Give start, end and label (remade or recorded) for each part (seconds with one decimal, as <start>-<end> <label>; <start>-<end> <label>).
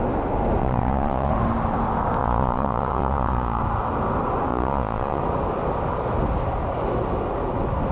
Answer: 0.0-0.6 recorded; 0.6-1.3 remade; 1.3-2.2 recorded; 2.2-3.6 remade; 3.6-4.5 recorded; 4.5-5.2 remade; 5.2-7.9 recorded